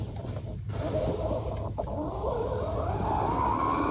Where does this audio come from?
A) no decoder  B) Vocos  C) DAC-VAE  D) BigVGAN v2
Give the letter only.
A